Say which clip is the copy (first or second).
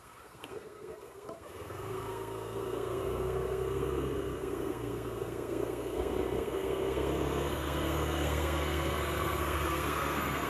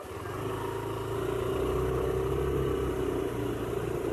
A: first